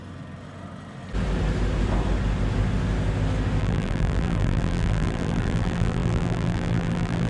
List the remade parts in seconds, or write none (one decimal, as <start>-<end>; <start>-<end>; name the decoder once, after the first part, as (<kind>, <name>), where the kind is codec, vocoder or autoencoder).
3.6-7.3 (vocoder, BigVGAN v2)